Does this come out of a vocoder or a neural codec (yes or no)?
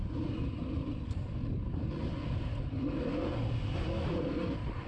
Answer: no